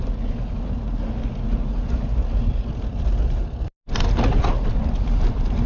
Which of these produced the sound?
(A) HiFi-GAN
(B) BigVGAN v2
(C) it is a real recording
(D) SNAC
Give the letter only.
C